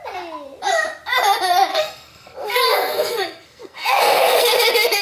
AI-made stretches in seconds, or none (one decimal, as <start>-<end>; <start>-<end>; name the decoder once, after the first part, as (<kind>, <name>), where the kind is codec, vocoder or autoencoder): 1.7-5.0 (codec, SNAC)